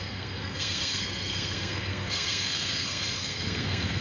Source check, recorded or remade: remade